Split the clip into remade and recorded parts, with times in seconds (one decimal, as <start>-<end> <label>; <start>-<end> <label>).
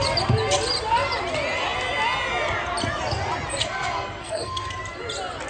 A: 0.0-3.6 recorded; 3.6-4.7 remade; 4.7-5.5 recorded